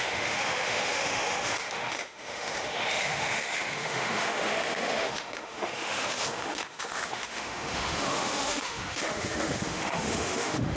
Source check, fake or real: fake